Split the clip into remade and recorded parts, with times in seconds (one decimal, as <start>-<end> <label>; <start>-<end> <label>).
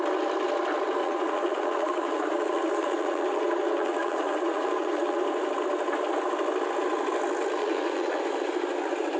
0.0-1.0 recorded; 1.0-5.2 remade; 5.2-7.6 recorded; 7.6-8.2 remade; 8.2-9.2 recorded